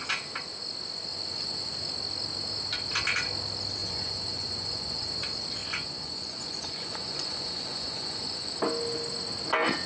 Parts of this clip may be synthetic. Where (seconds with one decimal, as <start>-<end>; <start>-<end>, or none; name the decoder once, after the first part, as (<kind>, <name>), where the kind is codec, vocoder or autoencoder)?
1.1-1.7 (vocoder, Vocos); 3.8-5.1; 5.6-8.5